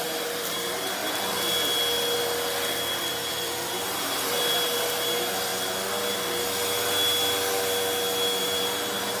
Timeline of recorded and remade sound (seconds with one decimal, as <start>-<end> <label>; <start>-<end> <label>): 0.0-1.0 remade; 1.0-3.1 recorded; 3.1-5.5 remade; 5.5-8.4 recorded; 8.4-9.2 remade